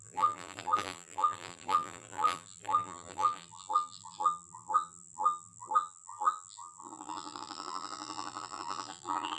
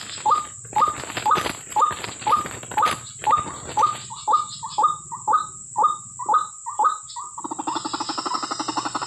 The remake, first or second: first